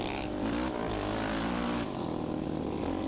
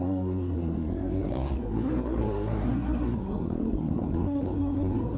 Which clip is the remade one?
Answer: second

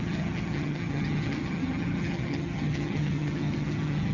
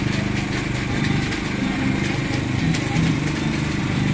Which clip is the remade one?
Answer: first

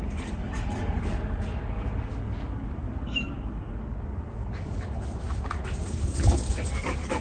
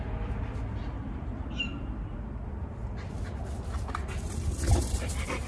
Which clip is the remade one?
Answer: first